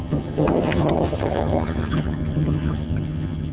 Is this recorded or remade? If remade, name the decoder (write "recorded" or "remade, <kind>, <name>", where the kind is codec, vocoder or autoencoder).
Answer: remade, vocoder, HiFi-GAN